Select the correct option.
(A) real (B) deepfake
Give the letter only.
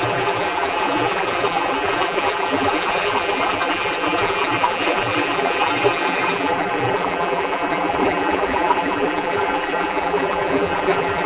B